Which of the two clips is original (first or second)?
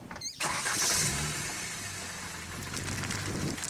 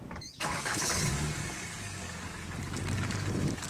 first